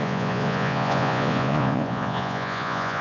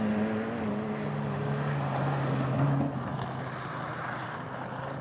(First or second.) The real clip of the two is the second